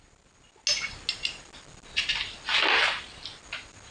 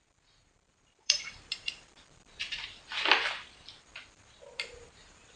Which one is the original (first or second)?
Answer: first